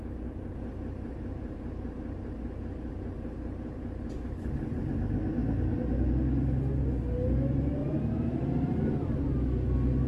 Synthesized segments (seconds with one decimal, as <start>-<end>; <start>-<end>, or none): 7.8-8.8